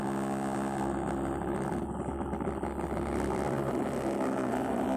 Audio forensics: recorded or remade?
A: recorded